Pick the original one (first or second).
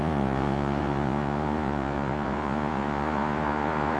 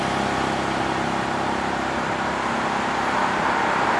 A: second